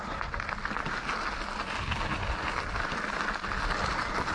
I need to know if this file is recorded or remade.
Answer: recorded